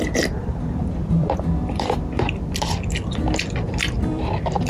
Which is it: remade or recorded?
remade